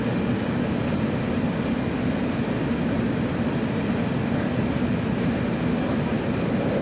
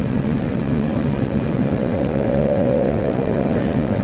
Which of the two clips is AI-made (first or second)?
second